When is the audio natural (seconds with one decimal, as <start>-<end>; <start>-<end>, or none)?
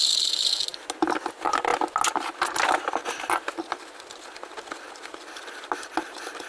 0.0-6.5